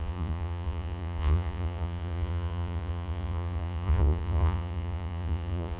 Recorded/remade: remade